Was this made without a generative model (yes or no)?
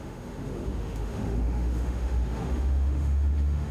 no